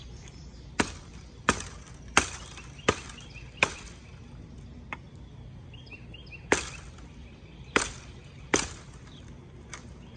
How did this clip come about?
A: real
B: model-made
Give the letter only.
B